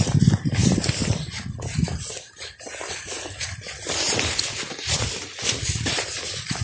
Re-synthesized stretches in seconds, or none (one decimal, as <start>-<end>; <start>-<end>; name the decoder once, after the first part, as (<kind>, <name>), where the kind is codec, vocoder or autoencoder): 0.0-6.6 (vocoder, BigVGAN v2)